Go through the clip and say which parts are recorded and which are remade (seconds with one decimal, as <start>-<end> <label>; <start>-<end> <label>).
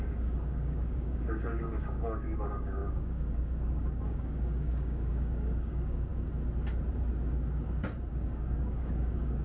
0.0-6.1 remade; 6.1-8.1 recorded; 8.1-9.4 remade